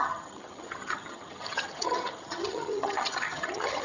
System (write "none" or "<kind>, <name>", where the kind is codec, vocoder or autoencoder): vocoder, HiFi-GAN